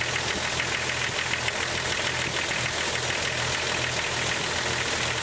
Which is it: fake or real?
real